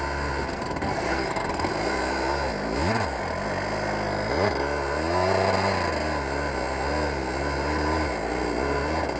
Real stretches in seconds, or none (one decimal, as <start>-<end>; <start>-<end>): 0.0-0.5; 1.7-9.2